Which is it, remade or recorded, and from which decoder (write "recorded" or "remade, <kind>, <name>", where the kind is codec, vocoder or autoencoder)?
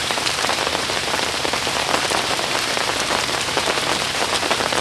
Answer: remade, vocoder, BigVGAN v2